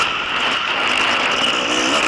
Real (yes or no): yes